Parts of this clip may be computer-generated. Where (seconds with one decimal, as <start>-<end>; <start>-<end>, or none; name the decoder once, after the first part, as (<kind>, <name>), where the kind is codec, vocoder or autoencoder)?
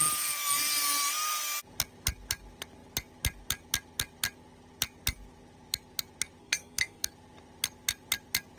6.4-7.1 (codec, SNAC)